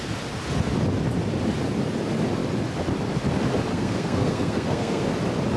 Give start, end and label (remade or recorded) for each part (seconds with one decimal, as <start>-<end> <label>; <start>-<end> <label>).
0.0-3.7 recorded; 3.7-5.1 remade; 5.1-5.6 recorded